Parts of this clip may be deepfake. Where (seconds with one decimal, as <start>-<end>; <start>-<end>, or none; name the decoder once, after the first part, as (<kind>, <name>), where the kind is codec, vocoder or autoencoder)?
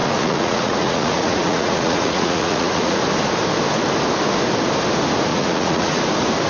0.0-3.0 (vocoder, Vocos); 5.3-6.0